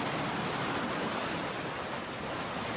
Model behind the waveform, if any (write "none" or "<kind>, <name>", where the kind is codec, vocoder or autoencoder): none